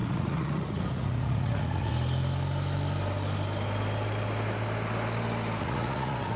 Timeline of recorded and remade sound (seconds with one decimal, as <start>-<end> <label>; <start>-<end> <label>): 0.0-1.9 remade; 1.9-5.6 recorded; 5.6-6.4 remade